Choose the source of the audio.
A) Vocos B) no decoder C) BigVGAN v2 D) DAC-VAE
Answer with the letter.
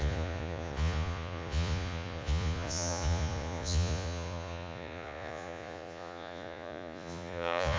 A